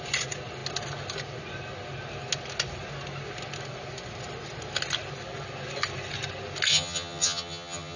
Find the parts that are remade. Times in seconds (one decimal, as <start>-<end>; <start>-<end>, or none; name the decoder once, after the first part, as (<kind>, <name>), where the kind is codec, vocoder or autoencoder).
6.7-8.0 (vocoder, HiFi-GAN)